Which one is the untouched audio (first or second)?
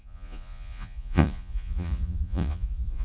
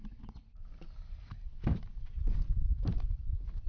second